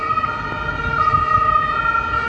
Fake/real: real